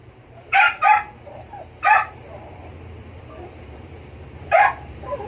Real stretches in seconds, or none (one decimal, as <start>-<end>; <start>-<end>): none